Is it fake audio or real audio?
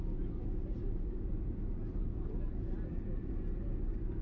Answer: real